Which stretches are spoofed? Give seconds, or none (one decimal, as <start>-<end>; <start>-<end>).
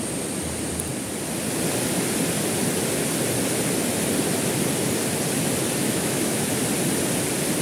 5.8-6.4